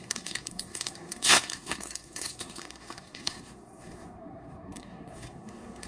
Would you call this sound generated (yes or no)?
yes